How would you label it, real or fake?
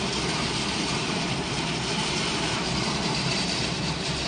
fake